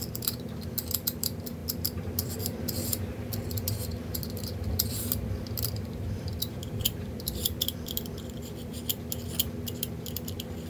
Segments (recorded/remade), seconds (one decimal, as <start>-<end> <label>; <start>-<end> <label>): 0.0-10.7 remade